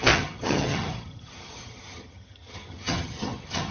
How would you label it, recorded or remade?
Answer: remade